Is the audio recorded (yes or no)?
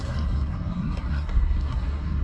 no